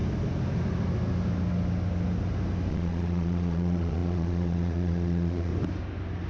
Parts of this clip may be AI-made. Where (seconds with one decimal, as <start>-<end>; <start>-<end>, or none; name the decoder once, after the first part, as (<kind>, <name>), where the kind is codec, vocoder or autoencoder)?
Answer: 2.7-5.5 (vocoder, Vocos)